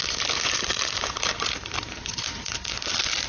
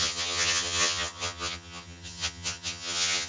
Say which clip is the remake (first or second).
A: second